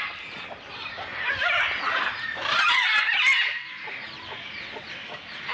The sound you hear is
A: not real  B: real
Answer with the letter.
B